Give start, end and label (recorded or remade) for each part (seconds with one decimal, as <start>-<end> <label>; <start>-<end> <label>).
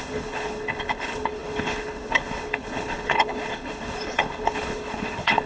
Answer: 0.0-5.5 remade